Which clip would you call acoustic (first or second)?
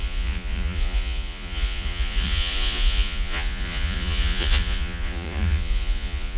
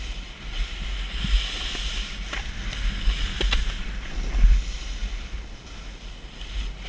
second